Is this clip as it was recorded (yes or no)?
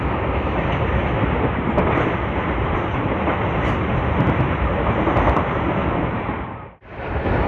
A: yes